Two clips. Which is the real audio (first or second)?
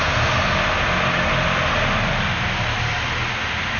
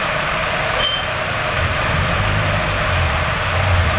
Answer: first